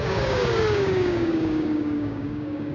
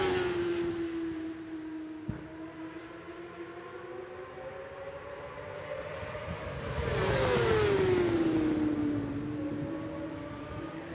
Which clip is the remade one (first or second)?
first